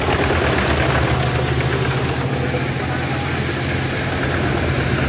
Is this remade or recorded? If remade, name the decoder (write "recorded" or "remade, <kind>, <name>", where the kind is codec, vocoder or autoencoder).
recorded